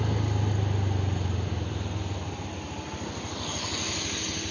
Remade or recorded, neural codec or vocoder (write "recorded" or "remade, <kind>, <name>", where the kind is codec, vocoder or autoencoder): recorded